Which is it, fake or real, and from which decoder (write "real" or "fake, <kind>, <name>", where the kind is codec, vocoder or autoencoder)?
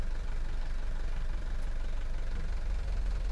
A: fake, vocoder, BigVGAN v2